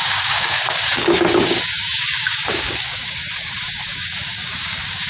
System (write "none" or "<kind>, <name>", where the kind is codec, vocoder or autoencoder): codec, DAC